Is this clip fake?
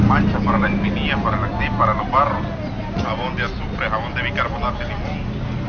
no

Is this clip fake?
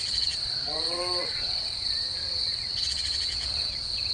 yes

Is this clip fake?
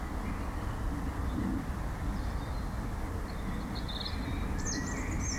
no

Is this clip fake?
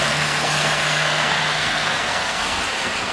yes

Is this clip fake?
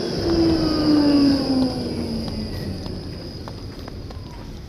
no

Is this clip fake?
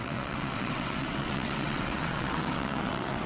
yes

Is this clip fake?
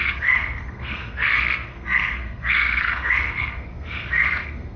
yes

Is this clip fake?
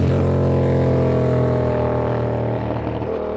no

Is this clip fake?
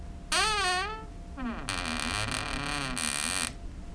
no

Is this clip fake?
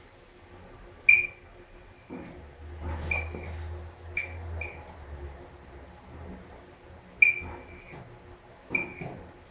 no